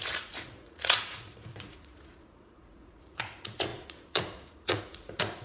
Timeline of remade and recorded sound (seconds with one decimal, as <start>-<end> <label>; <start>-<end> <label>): 0.0-5.4 remade